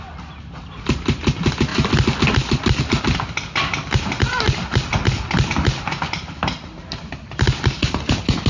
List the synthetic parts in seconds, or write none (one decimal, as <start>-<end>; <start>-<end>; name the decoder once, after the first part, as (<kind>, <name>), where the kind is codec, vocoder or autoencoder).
none